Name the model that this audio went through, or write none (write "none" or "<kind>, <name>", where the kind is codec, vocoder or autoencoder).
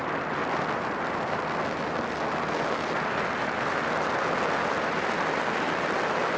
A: none